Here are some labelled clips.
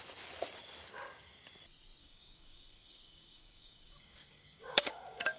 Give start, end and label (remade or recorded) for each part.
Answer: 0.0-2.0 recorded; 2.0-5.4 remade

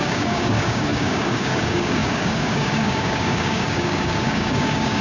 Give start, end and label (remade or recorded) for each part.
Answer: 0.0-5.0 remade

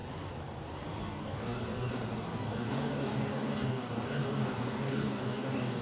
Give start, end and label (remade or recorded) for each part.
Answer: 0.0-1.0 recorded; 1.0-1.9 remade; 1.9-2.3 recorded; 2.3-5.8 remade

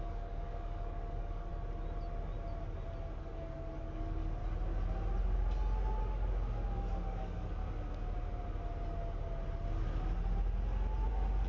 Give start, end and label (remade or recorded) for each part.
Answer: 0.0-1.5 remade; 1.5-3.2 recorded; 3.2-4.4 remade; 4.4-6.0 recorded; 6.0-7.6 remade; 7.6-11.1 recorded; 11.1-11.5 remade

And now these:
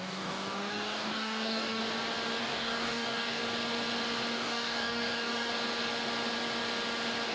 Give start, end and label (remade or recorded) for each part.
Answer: 0.0-1.8 remade; 1.8-2.4 recorded; 2.4-3.4 remade; 3.4-4.3 recorded; 4.3-5.5 remade; 5.5-7.3 recorded

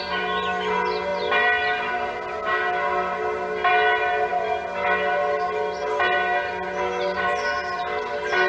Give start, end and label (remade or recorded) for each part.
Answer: 0.0-8.5 recorded

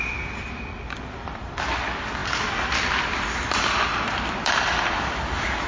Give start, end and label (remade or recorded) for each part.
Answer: 0.0-5.7 recorded